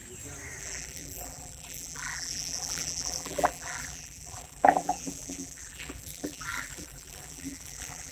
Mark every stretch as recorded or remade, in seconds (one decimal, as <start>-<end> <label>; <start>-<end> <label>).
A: 0.0-0.6 recorded; 0.6-8.1 remade